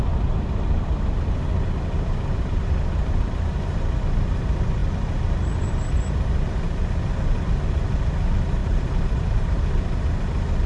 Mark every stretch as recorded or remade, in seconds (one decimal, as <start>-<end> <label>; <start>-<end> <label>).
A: 0.0-8.6 recorded; 8.6-9.7 remade; 9.7-10.7 recorded